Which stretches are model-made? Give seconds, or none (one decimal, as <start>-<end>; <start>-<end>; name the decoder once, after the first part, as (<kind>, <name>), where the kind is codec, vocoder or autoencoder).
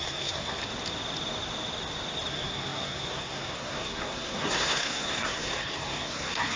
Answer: 0.0-0.6 (codec, SNAC); 2.3-6.6